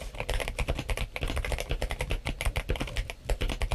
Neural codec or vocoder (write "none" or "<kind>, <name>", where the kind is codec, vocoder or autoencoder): none